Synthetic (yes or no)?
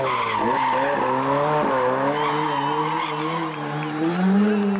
no